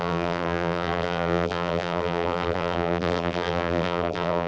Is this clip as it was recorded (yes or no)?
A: no